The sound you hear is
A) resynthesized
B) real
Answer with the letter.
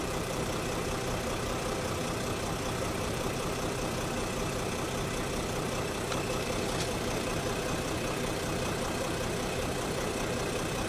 A